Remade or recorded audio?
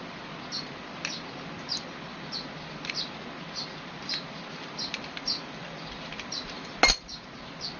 recorded